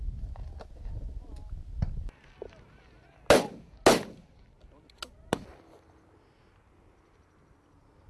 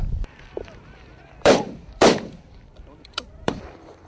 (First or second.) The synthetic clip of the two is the second